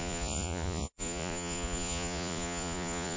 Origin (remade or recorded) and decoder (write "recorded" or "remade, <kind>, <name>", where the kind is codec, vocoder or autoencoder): remade, vocoder, Vocos